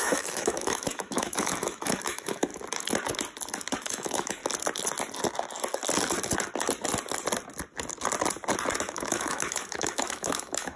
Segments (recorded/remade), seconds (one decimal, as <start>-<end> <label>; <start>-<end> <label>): 0.0-2.5 remade; 2.5-3.8 recorded; 3.8-4.4 remade; 4.4-8.8 recorded; 8.8-10.8 remade